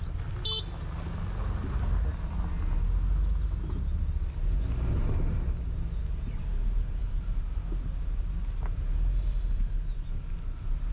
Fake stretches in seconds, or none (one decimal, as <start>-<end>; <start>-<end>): none